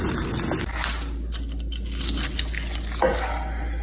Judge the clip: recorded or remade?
recorded